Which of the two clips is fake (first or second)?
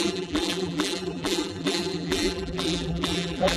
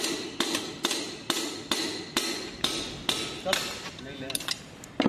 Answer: first